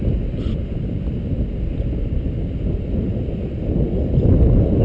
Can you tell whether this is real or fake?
real